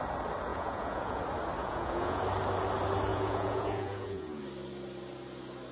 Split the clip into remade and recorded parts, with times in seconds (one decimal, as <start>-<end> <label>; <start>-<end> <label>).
0.0-0.5 recorded; 0.5-1.2 remade; 1.2-1.6 recorded; 1.6-2.2 remade; 2.2-3.1 recorded; 3.1-4.4 remade; 4.4-5.7 recorded